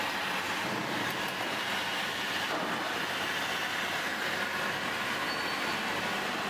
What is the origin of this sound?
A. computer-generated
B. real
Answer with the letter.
B